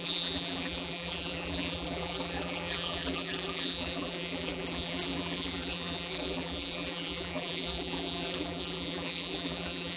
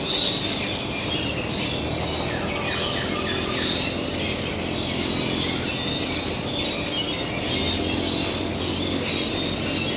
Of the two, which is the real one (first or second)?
second